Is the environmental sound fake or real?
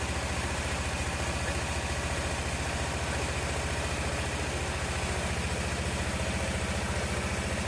real